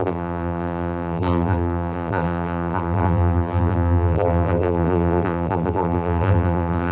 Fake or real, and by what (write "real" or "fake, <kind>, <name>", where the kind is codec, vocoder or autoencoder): fake, vocoder, BigVGAN v2